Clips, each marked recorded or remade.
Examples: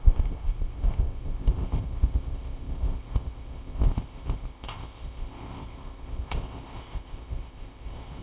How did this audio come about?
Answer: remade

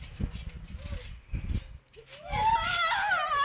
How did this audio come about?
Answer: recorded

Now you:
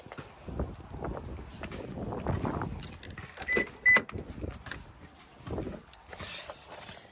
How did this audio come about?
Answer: recorded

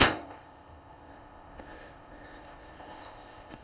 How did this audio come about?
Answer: remade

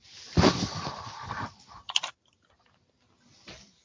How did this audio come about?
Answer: recorded